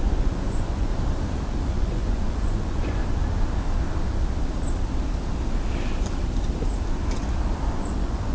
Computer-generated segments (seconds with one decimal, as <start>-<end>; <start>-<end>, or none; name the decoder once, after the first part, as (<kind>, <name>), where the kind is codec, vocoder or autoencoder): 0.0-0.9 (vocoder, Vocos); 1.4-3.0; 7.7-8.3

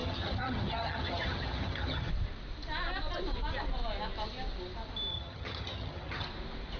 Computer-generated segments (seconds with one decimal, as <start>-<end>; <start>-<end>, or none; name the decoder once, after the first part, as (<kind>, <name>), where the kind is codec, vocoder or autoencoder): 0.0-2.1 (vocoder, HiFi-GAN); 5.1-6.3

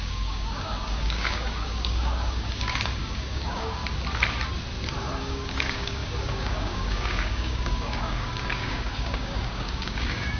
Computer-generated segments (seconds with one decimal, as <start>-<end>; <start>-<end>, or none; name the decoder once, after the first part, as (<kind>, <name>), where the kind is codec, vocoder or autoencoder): 0.0-3.8 (codec, DAC); 5.2-10.4